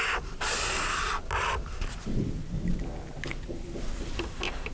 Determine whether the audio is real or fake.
real